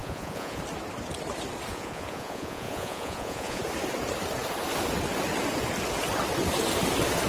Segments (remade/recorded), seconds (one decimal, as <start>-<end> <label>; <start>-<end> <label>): 0.0-0.6 remade; 0.6-1.7 recorded; 1.7-3.6 remade; 3.6-7.3 recorded